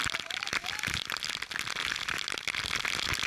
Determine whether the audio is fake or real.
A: real